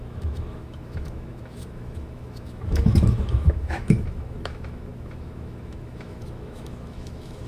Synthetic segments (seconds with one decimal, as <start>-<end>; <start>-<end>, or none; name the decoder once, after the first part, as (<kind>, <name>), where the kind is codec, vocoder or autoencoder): 0.0-7.5 (autoencoder, DAC-VAE)